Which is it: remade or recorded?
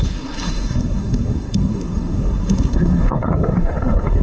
remade